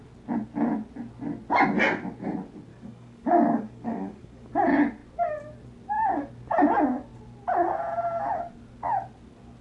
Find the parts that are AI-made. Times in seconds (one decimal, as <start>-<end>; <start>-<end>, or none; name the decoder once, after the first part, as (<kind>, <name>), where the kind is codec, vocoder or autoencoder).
2.7-4.5 (codec, DAC)